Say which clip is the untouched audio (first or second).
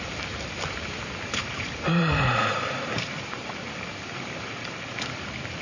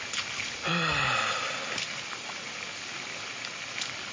second